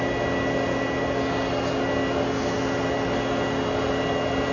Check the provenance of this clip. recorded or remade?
recorded